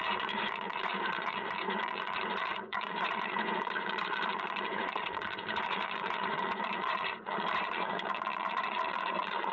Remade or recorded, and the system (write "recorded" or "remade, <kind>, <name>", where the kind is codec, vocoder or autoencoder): remade, vocoder, Vocos